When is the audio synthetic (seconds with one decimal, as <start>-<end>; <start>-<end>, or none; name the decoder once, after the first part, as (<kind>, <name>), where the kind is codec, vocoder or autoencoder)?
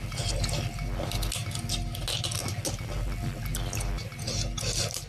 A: none